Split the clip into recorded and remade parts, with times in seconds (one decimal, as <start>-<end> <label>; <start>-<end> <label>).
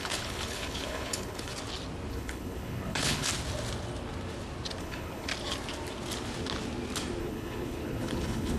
0.0-1.5 remade; 1.5-2.1 recorded; 2.1-3.3 remade; 3.3-4.8 recorded; 4.8-5.3 remade; 5.3-7.2 recorded; 7.2-8.6 remade